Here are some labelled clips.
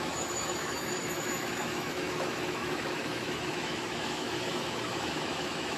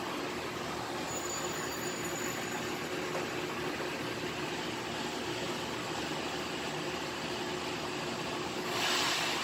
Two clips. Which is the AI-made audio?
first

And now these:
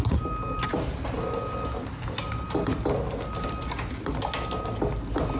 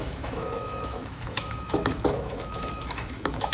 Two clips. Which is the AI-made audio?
second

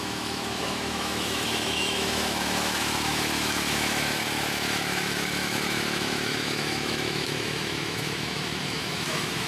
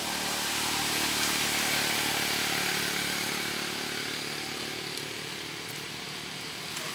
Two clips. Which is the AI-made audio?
first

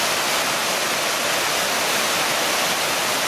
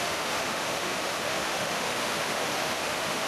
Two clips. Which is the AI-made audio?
second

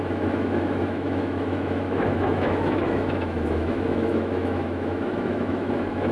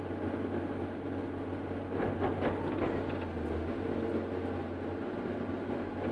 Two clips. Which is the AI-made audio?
first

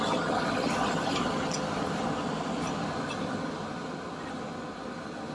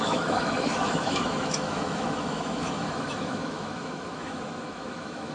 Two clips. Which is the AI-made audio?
second